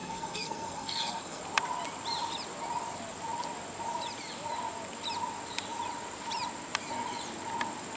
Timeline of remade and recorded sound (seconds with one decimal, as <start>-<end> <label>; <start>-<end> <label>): 0.0-1.4 remade; 1.4-8.0 recorded